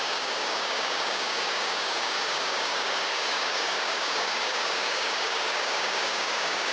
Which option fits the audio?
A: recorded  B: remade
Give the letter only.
B